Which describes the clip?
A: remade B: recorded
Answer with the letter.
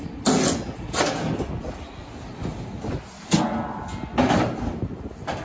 B